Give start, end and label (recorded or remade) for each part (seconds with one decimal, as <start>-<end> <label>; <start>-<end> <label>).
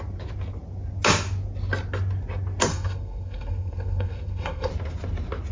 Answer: 0.0-2.7 recorded; 2.7-4.7 remade; 4.7-5.5 recorded